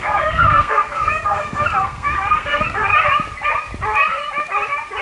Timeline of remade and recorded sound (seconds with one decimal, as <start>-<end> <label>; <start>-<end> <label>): 0.0-2.9 remade; 2.9-5.0 recorded